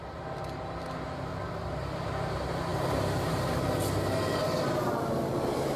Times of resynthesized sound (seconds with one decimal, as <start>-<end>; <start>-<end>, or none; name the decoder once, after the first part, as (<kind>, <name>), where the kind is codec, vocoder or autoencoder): none